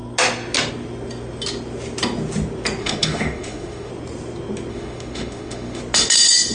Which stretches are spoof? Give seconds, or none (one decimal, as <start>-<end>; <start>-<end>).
2.8-3.9; 4.7-5.8